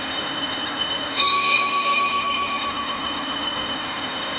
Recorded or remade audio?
remade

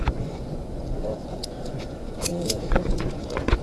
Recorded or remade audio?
remade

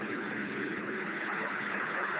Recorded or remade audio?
remade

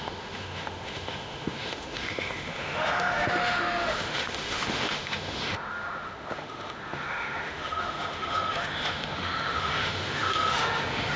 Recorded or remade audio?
remade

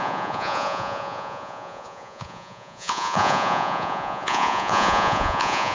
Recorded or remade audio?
remade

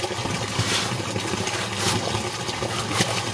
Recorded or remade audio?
recorded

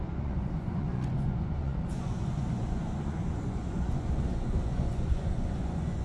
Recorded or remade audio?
remade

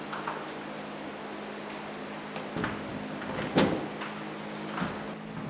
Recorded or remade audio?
recorded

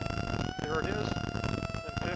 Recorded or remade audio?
recorded